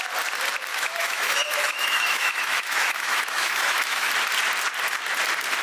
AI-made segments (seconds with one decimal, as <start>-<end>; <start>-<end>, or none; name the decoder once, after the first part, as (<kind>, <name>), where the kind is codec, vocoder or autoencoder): 0.7-4.1 (autoencoder, DAC-VAE)